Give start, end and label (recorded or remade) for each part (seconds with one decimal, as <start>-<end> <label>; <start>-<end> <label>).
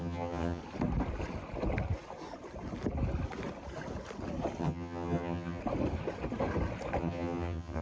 0.0-0.6 remade; 0.6-4.6 recorded; 4.6-5.6 remade; 5.6-7.0 recorded; 7.0-7.8 remade